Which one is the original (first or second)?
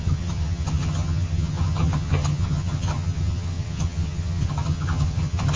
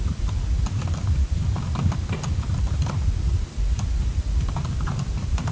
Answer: second